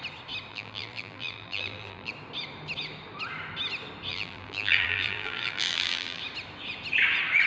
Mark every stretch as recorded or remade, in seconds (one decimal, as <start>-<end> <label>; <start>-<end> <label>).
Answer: 0.0-0.5 recorded; 0.5-2.1 remade; 2.1-4.1 recorded; 4.1-6.2 remade; 6.2-7.5 recorded

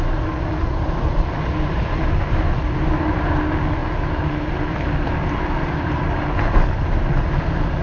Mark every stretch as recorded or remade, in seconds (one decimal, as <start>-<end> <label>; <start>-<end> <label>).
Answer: 0.0-3.8 remade; 3.8-4.5 recorded; 4.5-7.8 remade

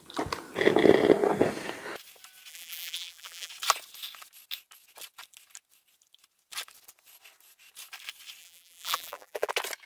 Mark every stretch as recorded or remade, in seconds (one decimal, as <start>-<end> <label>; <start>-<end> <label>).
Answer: 0.0-2.5 recorded; 2.5-3.5 remade; 3.5-8.4 recorded; 8.4-9.5 remade; 9.5-9.9 recorded

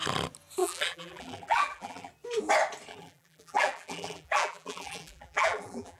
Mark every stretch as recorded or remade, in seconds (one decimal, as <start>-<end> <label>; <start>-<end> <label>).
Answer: 0.0-0.6 recorded; 0.6-2.1 remade; 2.1-2.9 recorded; 2.9-6.0 remade